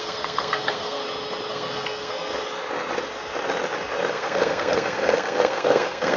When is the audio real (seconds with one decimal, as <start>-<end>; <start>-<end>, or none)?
1.0-1.5; 2.3-4.1